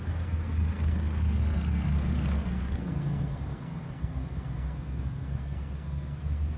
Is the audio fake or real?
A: fake